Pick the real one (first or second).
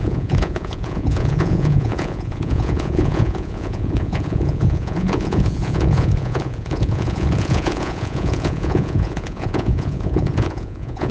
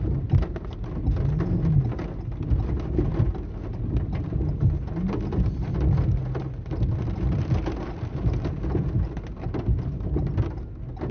second